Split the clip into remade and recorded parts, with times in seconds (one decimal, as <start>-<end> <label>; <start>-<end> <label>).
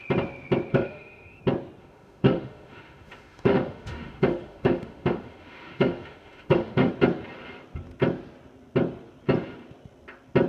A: 0.0-0.7 recorded; 0.7-1.4 remade; 1.4-1.8 recorded; 1.8-6.9 remade; 6.9-10.5 recorded